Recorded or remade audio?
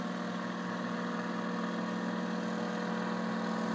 recorded